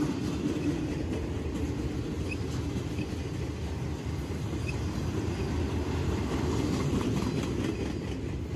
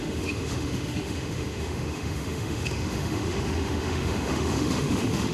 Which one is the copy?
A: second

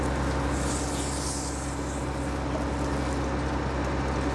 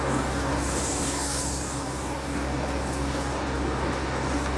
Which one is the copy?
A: second